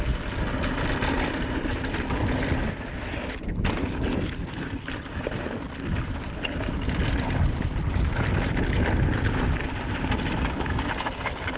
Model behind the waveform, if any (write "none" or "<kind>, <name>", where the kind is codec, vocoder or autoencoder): none